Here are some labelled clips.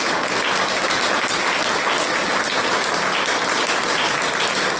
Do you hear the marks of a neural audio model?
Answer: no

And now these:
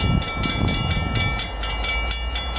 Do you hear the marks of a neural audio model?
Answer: no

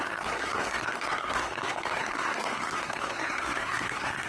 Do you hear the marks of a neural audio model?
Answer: yes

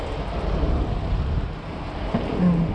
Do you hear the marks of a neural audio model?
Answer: no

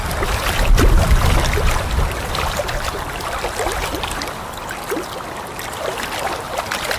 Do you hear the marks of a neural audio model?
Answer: no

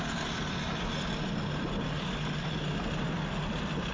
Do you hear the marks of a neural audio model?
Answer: no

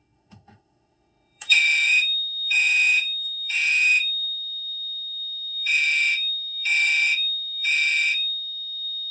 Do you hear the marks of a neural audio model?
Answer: yes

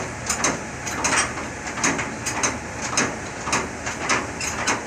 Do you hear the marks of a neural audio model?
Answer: no